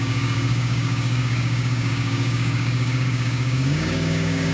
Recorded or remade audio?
remade